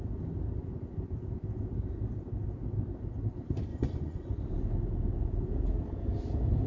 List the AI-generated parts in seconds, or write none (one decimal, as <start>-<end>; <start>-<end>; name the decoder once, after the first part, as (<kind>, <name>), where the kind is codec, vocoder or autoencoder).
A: 3.7-4.3 (vocoder, Vocos)